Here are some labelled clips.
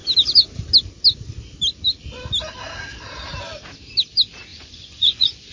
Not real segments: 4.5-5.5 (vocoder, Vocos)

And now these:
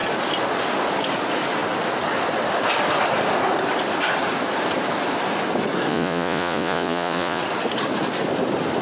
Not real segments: 5.9-7.4 (vocoder, Vocos)

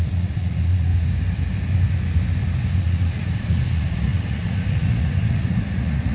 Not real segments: 0.0-0.9 (vocoder, Vocos); 2.8-6.1

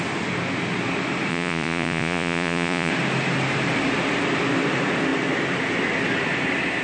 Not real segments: 1.3-2.9 (vocoder, Vocos)

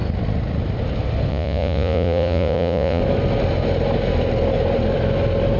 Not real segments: 1.3-3.0 (vocoder, Vocos)